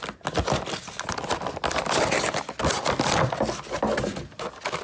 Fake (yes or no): no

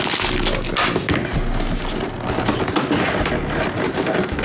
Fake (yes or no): no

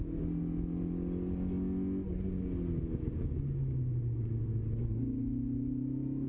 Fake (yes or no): no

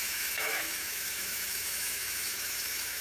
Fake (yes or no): yes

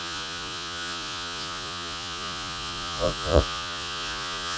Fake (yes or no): yes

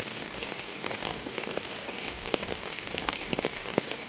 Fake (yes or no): yes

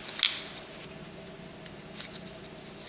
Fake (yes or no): no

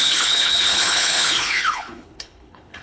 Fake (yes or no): yes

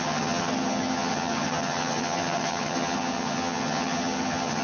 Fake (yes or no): yes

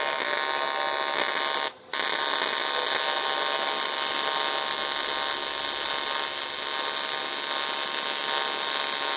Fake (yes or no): no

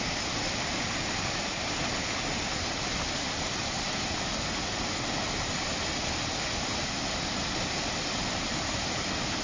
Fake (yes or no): no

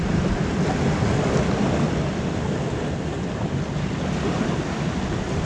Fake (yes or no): no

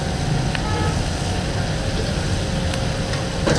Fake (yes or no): no